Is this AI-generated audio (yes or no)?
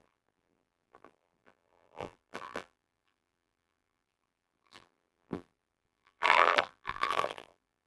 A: yes